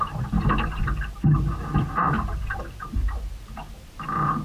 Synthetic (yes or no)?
yes